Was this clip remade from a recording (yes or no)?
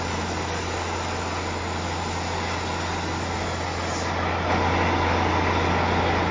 no